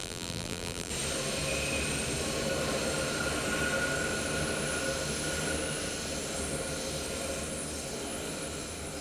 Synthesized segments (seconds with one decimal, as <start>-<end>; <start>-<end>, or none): 0.0-0.9